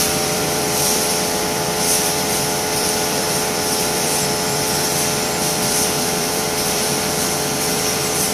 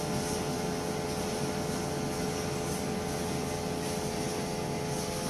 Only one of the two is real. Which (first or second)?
second